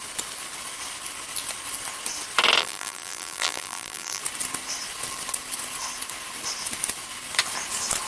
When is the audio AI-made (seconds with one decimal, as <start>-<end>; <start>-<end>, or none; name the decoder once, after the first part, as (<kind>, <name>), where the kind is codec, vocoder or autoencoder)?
2.6-4.2 (vocoder, BigVGAN v2)